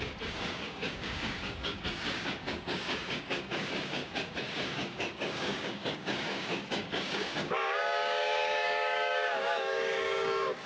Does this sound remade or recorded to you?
remade